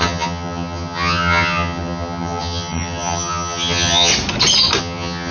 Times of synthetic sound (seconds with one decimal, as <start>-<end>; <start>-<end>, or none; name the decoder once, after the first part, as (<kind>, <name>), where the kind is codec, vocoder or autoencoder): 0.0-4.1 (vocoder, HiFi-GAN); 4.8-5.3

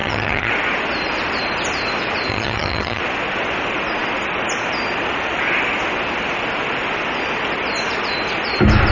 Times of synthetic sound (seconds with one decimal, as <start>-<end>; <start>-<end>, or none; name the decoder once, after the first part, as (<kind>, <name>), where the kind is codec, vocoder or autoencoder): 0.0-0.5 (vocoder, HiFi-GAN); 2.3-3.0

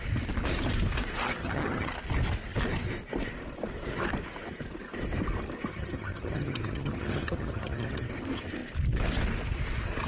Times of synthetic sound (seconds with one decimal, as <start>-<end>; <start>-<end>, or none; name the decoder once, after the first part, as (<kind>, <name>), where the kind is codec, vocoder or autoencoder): 1.4-1.9 (vocoder, HiFi-GAN); 5.7-8.1